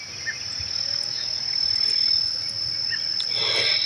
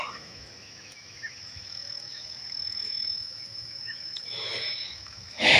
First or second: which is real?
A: first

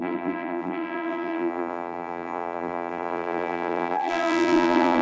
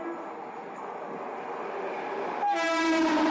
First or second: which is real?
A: second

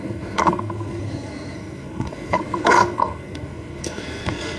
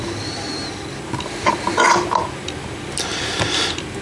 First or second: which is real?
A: second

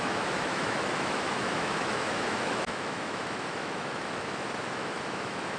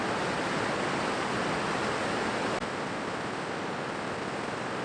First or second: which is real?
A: second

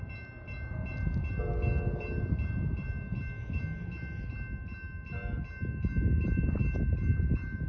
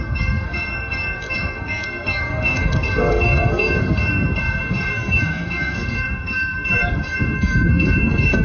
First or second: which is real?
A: first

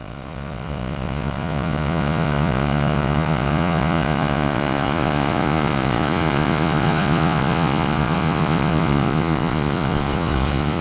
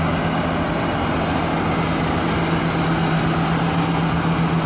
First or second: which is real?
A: second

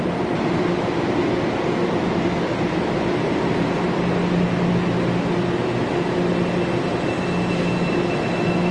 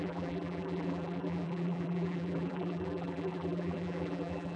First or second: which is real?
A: first